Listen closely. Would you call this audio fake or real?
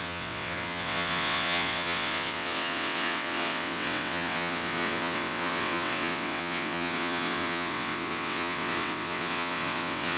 fake